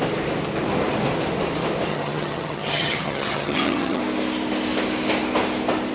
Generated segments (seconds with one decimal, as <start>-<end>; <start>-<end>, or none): 1.9-4.0